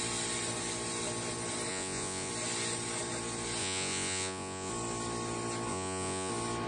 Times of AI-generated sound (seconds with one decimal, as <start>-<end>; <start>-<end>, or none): 1.7-2.3; 3.6-4.7; 5.7-6.3